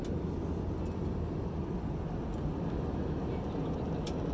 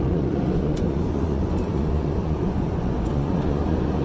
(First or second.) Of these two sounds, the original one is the first